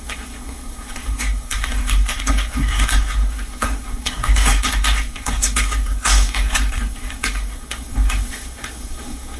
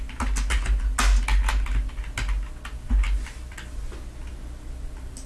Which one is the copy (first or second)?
first